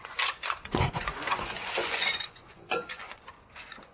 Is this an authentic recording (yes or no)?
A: no